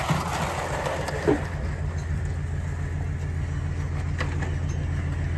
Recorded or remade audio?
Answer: recorded